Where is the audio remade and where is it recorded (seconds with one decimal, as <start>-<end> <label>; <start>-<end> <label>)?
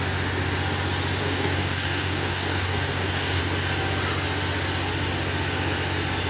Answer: 0.0-1.2 recorded; 1.2-3.4 remade; 3.4-6.3 recorded